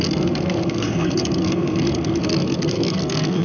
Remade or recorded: remade